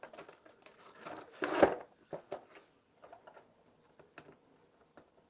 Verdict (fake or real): real